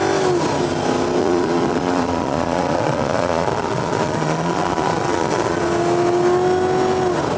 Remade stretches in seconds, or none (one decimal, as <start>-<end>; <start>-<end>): 1.2-5.6